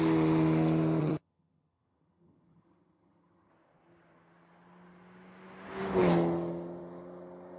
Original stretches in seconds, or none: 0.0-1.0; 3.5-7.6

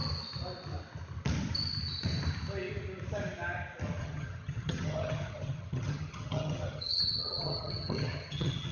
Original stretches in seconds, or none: 0.0-4.0

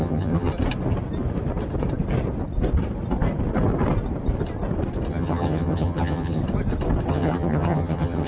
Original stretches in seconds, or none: 0.5-5.1; 6.4-7.1

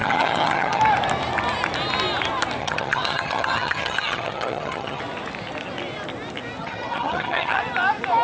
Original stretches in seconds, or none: 0.8-2.6; 5.0-6.6; 7.6-8.2

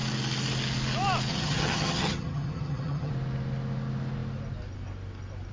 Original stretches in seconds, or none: 0.0-1.3; 3.1-5.5

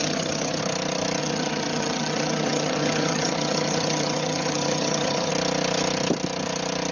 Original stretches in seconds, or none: 0.6-1.2; 5.3-6.9